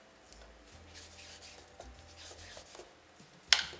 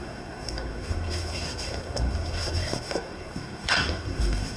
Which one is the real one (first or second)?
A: first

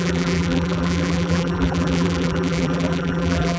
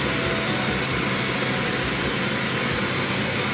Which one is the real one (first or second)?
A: second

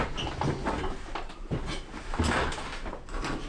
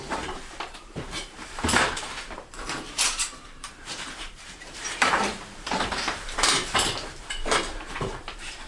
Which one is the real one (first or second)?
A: first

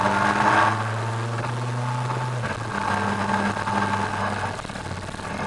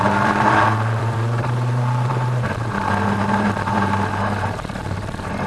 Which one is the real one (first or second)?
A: first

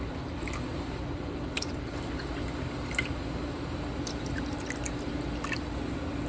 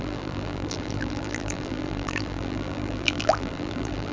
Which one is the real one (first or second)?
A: first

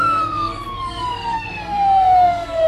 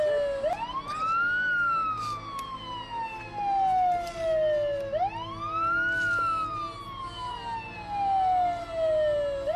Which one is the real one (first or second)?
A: second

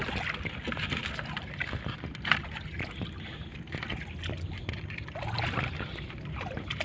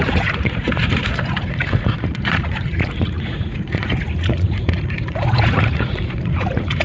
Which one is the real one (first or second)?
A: first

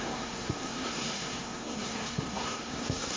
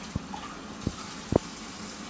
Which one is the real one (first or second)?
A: second